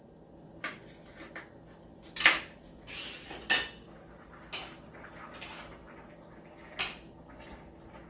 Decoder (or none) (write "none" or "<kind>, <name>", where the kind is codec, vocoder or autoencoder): none